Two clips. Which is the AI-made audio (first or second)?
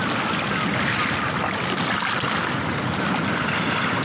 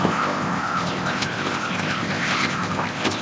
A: second